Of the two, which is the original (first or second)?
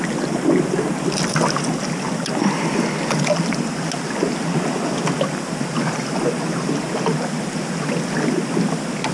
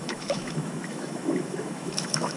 first